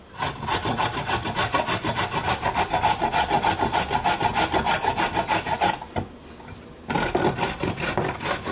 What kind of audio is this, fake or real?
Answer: real